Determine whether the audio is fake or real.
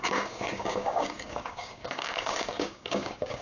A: fake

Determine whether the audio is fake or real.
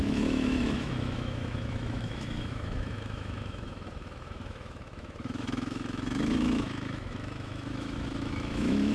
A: fake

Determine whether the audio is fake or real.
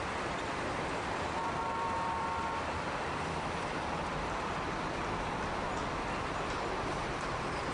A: fake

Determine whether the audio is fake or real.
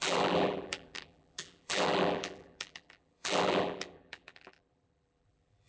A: fake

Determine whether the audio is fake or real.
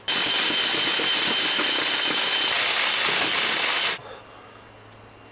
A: real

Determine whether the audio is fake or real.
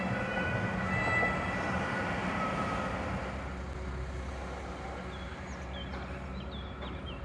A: real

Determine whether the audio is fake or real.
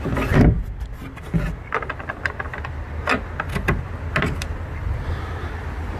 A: real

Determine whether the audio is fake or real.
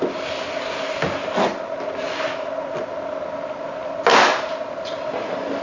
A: real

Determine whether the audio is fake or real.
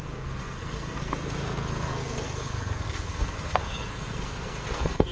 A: fake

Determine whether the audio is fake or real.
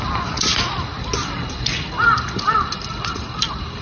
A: real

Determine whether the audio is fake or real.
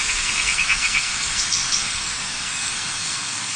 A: fake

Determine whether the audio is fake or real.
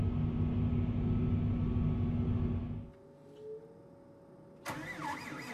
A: real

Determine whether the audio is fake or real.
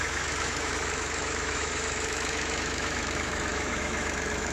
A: fake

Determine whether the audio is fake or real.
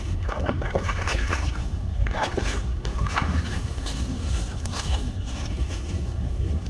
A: fake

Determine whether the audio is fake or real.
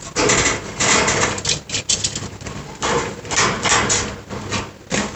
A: real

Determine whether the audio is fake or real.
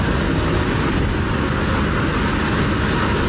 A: real